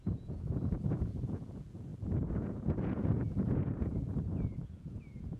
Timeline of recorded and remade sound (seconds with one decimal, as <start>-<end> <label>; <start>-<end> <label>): 0.0-5.4 remade